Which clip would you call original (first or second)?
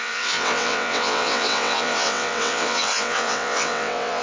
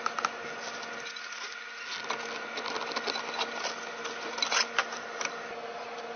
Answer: second